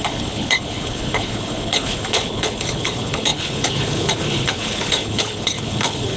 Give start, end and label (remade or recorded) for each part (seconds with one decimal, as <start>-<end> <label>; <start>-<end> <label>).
0.0-6.2 remade